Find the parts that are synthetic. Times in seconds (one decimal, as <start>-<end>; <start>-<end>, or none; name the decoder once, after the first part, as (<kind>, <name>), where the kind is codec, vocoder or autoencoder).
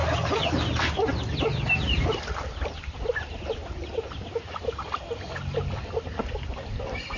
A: none